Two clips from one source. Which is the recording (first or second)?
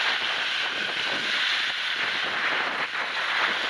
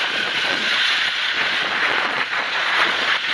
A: first